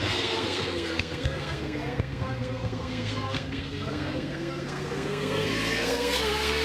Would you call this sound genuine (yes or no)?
no